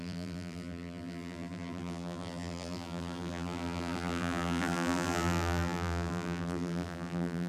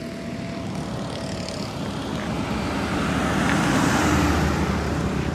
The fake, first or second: first